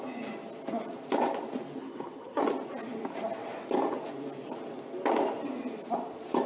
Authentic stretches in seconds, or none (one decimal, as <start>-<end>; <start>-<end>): 0.0-1.8; 2.4-6.5